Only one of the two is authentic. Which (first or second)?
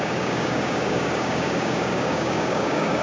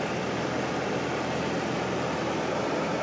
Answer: second